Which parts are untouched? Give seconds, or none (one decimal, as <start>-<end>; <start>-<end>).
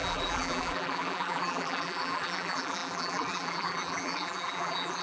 none